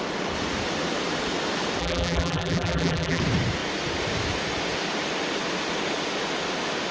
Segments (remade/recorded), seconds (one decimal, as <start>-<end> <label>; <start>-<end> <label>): 0.0-1.8 recorded; 1.8-3.2 remade; 3.2-6.9 recorded